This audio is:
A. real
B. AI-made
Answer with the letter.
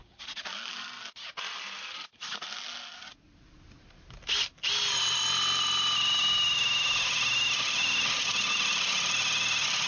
A